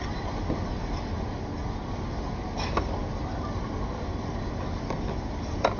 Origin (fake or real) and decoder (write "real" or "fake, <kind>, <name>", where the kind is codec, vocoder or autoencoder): real